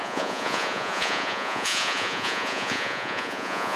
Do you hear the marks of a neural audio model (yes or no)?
yes